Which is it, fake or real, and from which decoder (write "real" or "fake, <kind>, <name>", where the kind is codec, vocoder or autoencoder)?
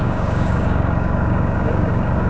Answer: fake, codec, DAC